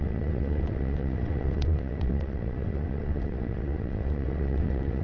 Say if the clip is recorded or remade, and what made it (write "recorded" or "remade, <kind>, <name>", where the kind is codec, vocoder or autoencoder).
remade, vocoder, WaveNeXt